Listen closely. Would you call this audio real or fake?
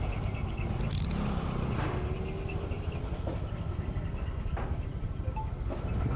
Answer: real